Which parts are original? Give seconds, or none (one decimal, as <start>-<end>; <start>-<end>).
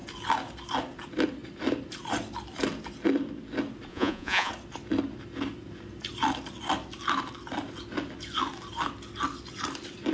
0.0-3.9; 4.5-10.1